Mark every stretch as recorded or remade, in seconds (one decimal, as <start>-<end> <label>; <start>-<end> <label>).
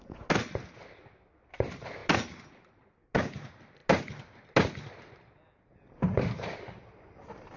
0.0-7.6 recorded